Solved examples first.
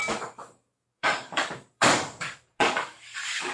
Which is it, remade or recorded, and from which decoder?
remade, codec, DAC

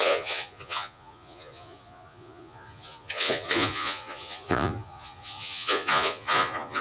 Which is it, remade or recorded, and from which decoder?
remade, vocoder, Vocos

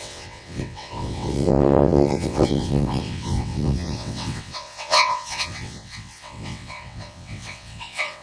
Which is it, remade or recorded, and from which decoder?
remade, vocoder, WaveNeXt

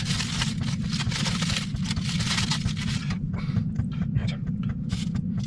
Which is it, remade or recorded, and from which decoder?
recorded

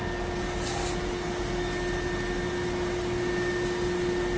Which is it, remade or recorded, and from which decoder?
recorded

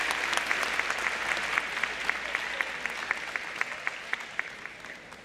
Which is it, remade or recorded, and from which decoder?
recorded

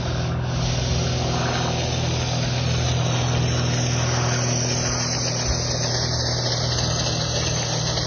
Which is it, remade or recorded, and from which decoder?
recorded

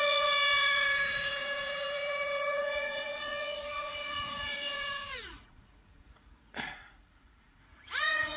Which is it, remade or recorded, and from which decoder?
remade, vocoder, Vocos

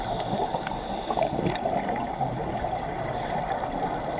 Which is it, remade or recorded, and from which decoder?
recorded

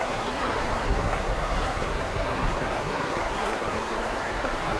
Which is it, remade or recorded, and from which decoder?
remade, codec, SNAC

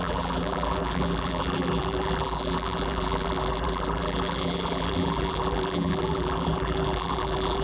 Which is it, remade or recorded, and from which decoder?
remade, vocoder, BigVGAN v2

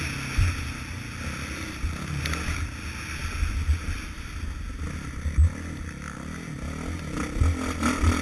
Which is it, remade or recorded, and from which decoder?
recorded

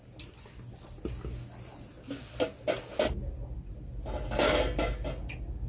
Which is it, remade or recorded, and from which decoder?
recorded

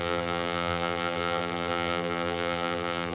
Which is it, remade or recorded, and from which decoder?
remade, vocoder, BigVGAN v2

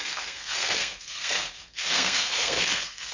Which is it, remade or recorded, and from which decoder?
remade, codec, SNAC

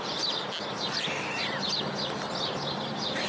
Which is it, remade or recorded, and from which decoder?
recorded